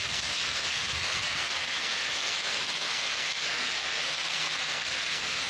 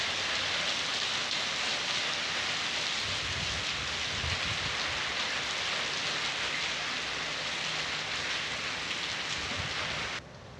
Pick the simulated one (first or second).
first